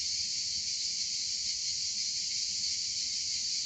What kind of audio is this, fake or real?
real